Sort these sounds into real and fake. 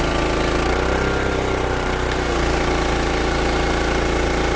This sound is real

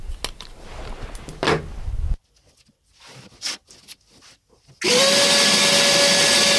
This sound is real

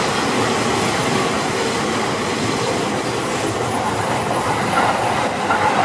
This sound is fake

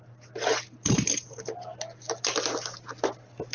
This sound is real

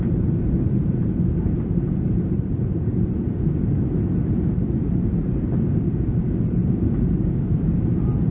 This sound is fake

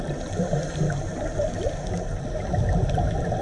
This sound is real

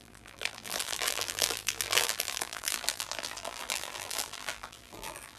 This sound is fake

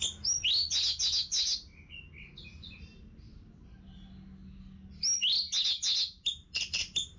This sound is real